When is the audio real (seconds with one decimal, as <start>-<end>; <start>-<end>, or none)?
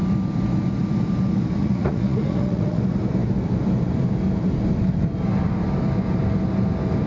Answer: 0.0-1.6; 2.8-7.1